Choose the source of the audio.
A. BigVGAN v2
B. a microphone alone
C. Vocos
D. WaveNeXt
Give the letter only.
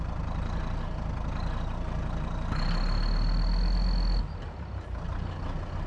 B